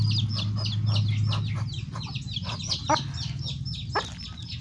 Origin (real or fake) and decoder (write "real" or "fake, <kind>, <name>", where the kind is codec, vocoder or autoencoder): real